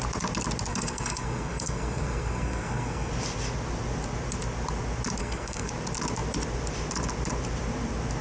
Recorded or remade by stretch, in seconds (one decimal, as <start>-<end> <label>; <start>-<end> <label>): 0.0-0.7 recorded; 0.7-3.1 remade; 3.1-5.2 recorded; 5.2-5.7 remade; 5.7-8.2 recorded